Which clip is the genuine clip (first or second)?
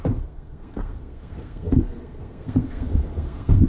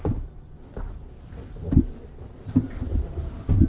second